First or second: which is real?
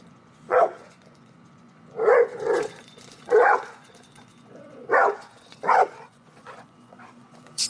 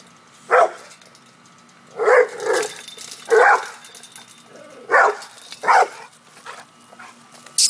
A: second